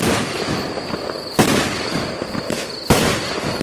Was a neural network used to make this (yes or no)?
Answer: no